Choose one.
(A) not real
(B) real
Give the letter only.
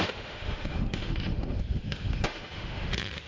A